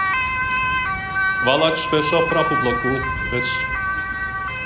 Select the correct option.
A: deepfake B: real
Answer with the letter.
B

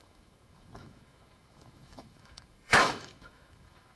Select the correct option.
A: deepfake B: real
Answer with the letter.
A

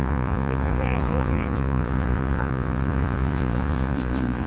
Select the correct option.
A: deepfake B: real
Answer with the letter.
A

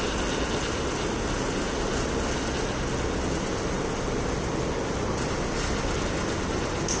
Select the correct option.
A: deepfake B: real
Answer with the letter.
B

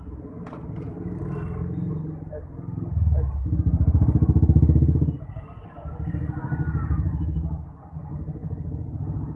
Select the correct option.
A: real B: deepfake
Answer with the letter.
A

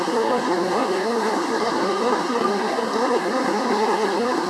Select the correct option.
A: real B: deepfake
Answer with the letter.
B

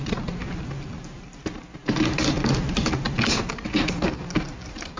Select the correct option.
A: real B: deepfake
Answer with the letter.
A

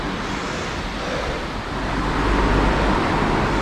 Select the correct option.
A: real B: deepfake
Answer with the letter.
A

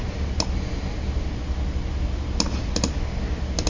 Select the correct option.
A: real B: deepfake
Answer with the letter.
A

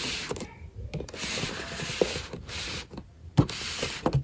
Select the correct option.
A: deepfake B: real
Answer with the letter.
B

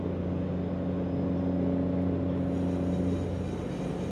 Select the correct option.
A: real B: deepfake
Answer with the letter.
A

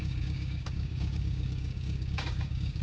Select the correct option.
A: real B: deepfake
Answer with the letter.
B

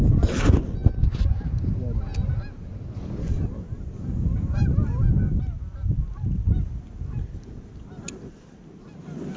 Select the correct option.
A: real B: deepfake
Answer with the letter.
A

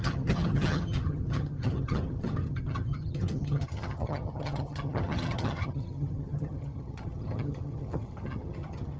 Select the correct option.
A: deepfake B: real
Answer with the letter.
A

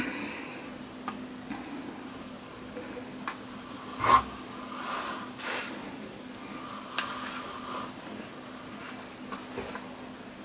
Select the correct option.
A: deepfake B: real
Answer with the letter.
B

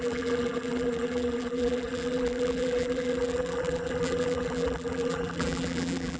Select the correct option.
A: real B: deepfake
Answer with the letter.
B